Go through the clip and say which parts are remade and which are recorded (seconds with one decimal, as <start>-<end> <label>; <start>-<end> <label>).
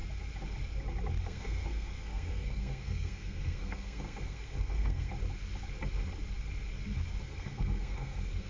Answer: 0.0-1.2 recorded; 1.2-5.1 remade; 5.1-7.2 recorded; 7.2-8.5 remade